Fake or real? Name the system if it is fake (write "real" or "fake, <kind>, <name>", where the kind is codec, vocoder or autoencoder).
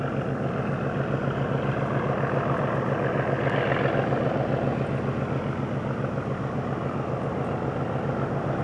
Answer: real